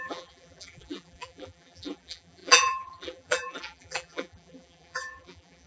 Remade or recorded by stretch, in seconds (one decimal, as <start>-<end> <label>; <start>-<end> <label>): 0.0-5.7 remade